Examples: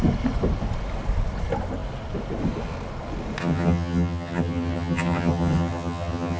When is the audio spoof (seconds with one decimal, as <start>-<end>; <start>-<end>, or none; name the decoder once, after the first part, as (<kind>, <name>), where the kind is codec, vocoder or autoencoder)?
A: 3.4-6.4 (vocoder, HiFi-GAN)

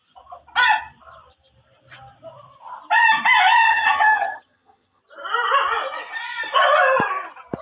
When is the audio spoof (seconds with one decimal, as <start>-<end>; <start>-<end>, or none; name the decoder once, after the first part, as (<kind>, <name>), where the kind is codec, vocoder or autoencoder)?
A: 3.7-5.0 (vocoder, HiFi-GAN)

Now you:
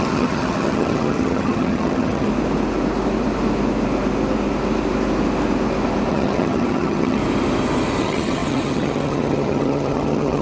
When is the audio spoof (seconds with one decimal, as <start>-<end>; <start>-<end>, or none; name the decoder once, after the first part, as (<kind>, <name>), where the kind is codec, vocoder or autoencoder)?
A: 0.0-2.3 (vocoder, HiFi-GAN); 6.1-7.2; 8.0-10.4

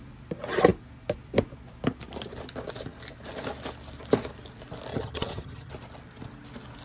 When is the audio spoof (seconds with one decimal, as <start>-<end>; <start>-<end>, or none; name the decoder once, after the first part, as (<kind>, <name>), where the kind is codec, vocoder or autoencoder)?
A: 4.9-5.7 (vocoder, HiFi-GAN)

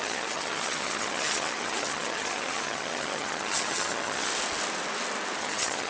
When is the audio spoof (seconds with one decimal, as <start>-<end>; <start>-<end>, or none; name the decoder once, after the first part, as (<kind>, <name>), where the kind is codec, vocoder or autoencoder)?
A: 0.0-4.3 (vocoder, HiFi-GAN); 5.4-5.9